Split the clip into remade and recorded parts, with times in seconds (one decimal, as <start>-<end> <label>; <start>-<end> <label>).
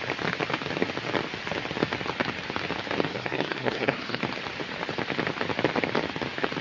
0.0-3.1 recorded; 3.1-4.2 remade; 4.2-6.6 recorded